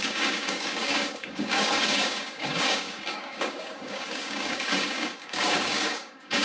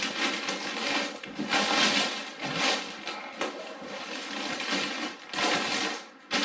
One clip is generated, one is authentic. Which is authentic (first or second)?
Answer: second